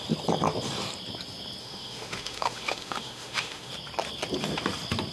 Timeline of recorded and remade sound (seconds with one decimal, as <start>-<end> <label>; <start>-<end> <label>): 0.0-1.6 recorded; 1.6-3.7 remade; 3.7-5.1 recorded